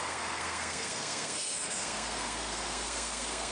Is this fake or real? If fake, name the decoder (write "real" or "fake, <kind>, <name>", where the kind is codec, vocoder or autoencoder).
fake, codec, SNAC